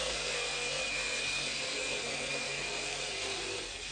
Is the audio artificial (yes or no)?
yes